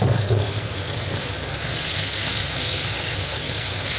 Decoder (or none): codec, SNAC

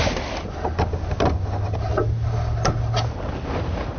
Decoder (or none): none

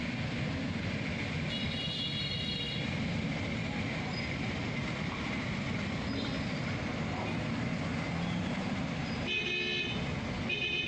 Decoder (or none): none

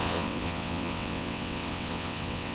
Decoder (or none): vocoder, WaveNeXt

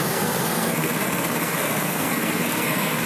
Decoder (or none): codec, SNAC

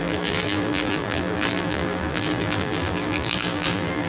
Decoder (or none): vocoder, BigVGAN v2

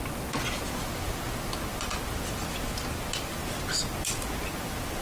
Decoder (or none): none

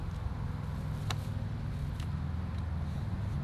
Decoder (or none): none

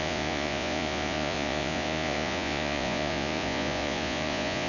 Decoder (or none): vocoder, Vocos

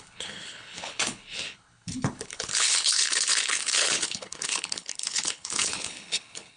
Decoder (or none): codec, HILCodec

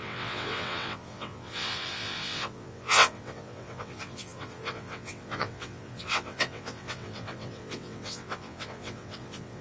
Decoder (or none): vocoder, WaveNeXt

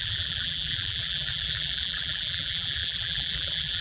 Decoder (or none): vocoder, BigVGAN v2